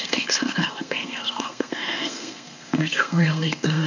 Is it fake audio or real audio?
fake